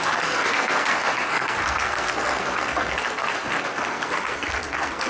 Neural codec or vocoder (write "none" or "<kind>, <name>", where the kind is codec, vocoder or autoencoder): codec, SNAC